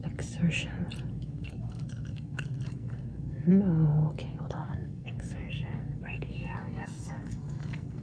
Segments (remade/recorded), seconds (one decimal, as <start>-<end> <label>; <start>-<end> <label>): 0.0-1.1 recorded; 1.1-3.5 remade; 3.5-4.5 recorded; 4.5-8.0 remade

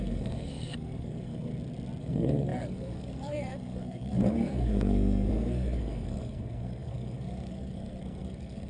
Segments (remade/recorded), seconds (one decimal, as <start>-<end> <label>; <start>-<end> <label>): 0.0-1.5 remade; 1.5-2.0 recorded; 2.0-8.7 remade

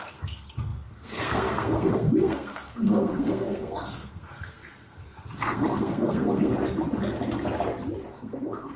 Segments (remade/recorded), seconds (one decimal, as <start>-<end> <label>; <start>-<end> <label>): 0.0-6.5 remade; 6.5-8.1 recorded; 8.1-8.8 remade

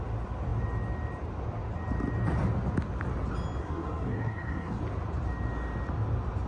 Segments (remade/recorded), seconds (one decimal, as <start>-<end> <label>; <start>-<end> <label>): 0.0-3.6 recorded; 3.6-4.8 remade; 4.8-6.5 recorded